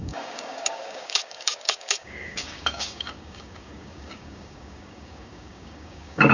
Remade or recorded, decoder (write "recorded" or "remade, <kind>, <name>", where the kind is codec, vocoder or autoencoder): remade, codec, DAC